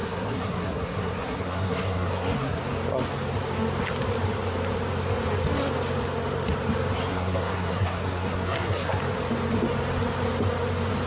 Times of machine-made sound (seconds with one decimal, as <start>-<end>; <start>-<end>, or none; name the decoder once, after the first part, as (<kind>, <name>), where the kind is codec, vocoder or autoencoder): 0.0-2.6 (codec, SNAC); 7.1-9.0